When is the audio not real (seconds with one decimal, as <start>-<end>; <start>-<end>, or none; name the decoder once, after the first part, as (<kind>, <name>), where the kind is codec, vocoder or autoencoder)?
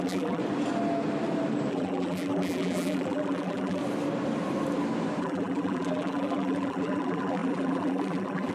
0.0-0.4 (vocoder, BigVGAN v2); 1.7-3.8; 5.2-8.5